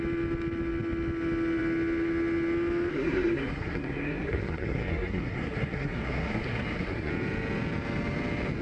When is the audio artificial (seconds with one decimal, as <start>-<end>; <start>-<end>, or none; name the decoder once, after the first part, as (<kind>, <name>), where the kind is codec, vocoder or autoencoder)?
2.9-7.1 (codec, SNAC)